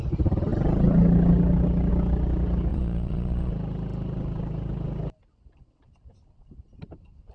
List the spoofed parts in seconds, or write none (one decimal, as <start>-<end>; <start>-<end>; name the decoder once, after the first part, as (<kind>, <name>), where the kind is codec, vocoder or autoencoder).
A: 2.7-3.5 (vocoder, Vocos)